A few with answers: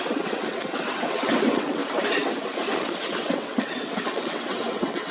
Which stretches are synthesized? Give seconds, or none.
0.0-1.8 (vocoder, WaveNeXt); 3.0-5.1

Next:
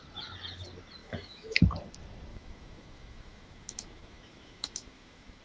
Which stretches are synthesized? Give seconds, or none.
1.0-1.6 (autoencoder, DAC-VAE); 2.3-5.4

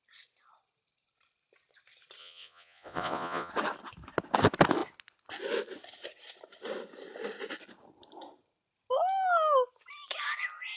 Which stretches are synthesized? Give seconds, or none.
2.2-3.5 (vocoder, Vocos)